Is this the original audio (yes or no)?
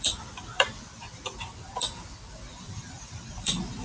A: no